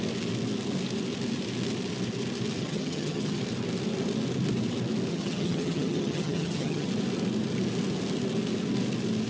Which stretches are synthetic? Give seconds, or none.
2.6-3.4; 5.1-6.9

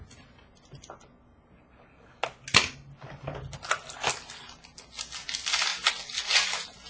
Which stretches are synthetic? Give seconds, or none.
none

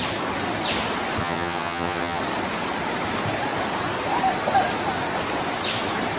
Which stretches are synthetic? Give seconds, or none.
1.2-2.2

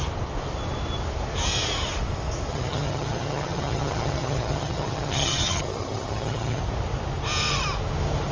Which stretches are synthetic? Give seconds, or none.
2.5-6.6

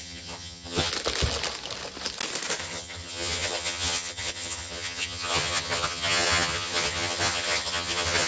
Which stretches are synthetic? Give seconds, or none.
0.0-0.9; 2.6-8.3

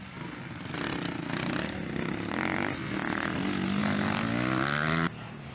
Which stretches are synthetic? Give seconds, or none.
none

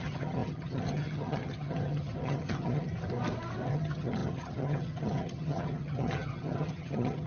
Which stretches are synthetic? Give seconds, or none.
0.0-2.9; 3.7-7.3